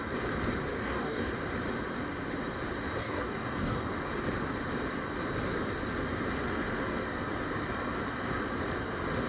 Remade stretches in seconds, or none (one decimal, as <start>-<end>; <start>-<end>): 0.7-1.3; 3.0-3.9